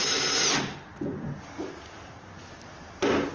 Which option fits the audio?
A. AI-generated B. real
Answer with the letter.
B